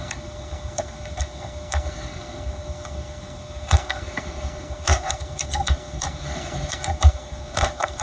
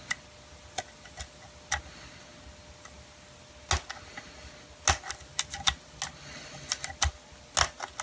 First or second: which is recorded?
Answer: second